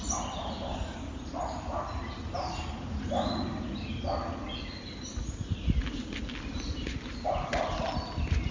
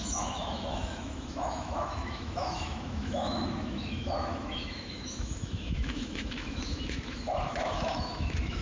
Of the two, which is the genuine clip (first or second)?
first